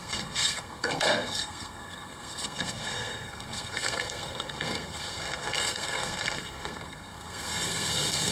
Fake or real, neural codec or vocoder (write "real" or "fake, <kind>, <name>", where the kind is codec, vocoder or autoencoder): fake, codec, SNAC